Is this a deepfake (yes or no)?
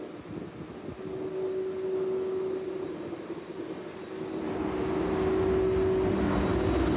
no